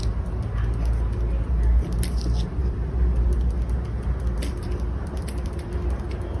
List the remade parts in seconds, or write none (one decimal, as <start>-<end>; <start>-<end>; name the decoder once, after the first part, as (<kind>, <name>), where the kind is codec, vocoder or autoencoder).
none